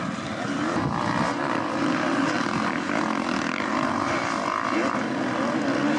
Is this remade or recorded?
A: recorded